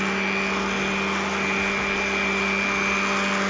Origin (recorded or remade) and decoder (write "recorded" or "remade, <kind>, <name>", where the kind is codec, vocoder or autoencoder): recorded